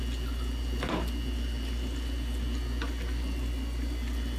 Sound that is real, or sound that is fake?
real